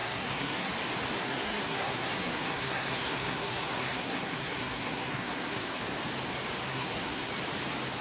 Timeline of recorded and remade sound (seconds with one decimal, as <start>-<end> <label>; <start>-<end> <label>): 0.0-0.7 remade; 0.7-1.2 recorded; 1.2-5.8 remade; 5.8-6.7 recorded; 6.7-7.3 remade; 7.3-8.0 recorded

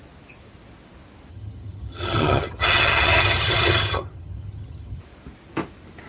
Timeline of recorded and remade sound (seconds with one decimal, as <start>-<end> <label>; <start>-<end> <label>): 0.0-1.3 recorded; 1.3-5.0 remade; 5.0-6.1 recorded

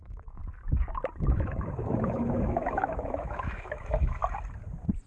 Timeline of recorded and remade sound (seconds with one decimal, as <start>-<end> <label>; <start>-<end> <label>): 0.0-0.4 remade; 0.4-1.3 recorded; 1.3-4.2 remade; 4.2-5.1 recorded

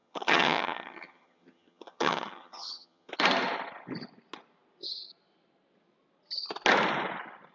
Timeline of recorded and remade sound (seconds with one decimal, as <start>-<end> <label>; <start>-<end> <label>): 0.0-3.1 remade; 3.1-7.5 recorded